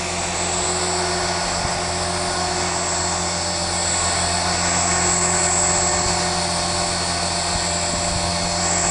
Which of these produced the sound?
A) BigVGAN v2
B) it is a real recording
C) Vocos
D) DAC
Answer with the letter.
B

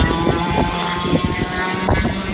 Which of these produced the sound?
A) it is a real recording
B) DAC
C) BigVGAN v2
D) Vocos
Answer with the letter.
A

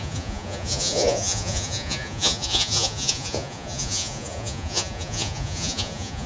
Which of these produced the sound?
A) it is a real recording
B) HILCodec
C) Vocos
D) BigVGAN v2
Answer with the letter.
C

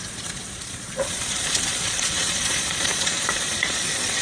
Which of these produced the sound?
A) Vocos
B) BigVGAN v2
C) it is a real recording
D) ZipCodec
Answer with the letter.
A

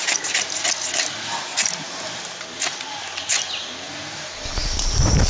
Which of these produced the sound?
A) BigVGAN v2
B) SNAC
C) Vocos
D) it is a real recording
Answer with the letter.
D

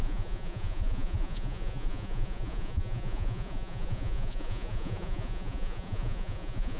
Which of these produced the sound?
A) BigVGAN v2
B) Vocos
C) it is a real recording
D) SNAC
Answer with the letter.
B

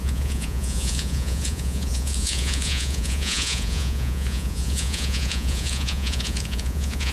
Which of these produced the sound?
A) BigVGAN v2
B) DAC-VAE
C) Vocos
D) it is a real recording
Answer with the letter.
C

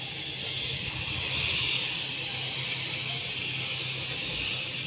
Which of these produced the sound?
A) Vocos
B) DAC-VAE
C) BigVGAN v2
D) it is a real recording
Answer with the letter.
D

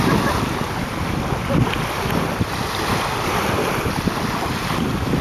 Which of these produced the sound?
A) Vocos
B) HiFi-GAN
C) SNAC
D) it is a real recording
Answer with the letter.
D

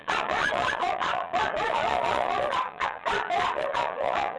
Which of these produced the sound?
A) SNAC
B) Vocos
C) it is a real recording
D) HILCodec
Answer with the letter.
B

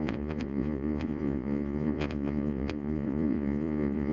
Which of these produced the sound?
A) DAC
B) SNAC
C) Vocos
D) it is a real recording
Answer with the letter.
C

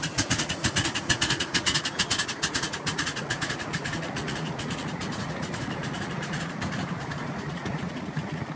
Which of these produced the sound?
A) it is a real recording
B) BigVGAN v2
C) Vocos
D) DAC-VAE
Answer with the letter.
C